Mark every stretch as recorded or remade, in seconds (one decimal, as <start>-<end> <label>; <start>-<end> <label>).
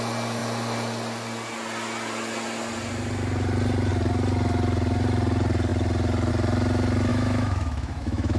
0.0-7.1 recorded; 7.1-8.4 remade